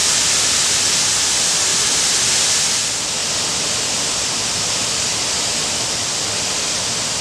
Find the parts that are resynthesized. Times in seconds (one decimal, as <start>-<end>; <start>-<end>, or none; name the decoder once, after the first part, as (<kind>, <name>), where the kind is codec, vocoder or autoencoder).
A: 0.0-0.8 (vocoder, BigVGAN v2); 1.7-2.4